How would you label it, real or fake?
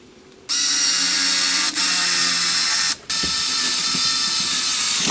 real